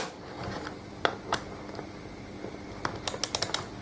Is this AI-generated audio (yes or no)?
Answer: no